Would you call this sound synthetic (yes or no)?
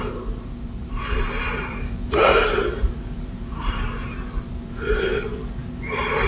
yes